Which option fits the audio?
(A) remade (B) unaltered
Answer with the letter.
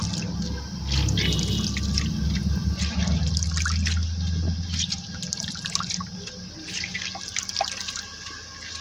B